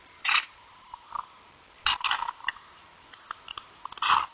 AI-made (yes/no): no